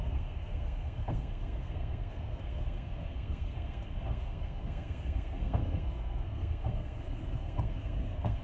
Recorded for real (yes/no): no